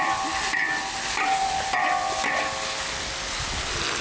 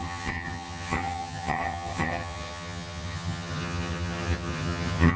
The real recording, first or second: first